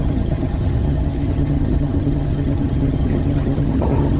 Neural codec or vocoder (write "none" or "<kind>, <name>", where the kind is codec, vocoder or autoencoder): vocoder, HiFi-GAN